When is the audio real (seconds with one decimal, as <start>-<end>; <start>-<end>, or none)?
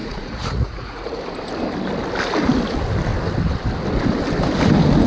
1.2-5.1